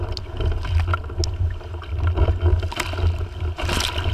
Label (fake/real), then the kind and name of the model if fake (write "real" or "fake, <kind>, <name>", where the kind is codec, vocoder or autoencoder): real